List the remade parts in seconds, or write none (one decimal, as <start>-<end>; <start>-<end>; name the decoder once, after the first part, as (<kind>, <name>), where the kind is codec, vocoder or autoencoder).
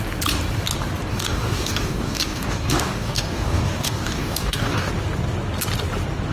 1.1-4.9 (codec, DAC)